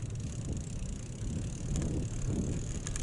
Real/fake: real